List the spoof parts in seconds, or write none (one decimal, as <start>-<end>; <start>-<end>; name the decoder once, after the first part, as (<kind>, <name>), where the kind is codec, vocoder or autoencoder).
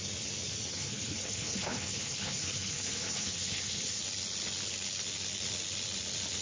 0.7-4.0 (codec, HILCodec)